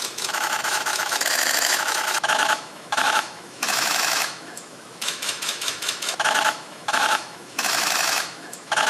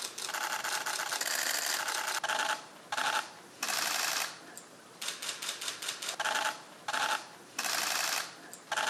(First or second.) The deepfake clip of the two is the first